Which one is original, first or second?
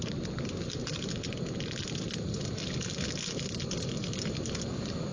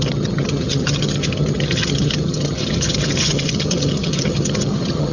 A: first